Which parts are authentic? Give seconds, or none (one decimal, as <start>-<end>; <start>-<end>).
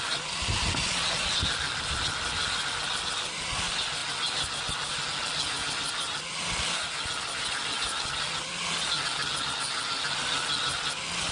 0.0-11.3